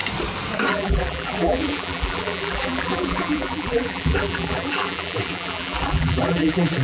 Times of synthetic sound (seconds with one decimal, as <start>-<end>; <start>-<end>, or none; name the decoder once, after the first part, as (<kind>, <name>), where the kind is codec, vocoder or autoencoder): 0.7-6.8 (vocoder, BigVGAN v2)